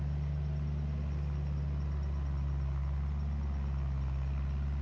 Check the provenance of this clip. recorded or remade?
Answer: recorded